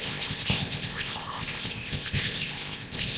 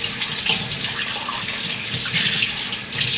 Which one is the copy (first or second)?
first